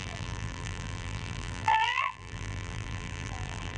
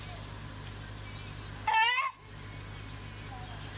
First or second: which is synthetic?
first